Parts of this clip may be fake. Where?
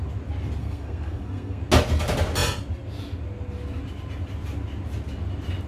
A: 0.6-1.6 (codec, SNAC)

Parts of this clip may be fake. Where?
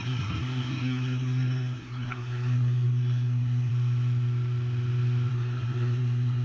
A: 0.0-3.7 (codec, SNAC); 5.3-6.4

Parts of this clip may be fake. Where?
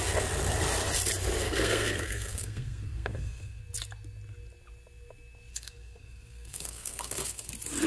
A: 1.4-3.6 (codec, SNAC); 5.5-7.5